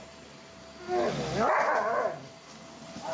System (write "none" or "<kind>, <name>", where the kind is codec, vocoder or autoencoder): none